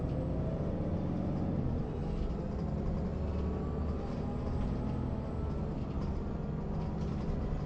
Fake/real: real